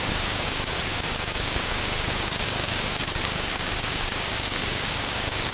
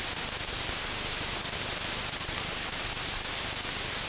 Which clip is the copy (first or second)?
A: first